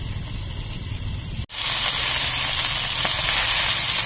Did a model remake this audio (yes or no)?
no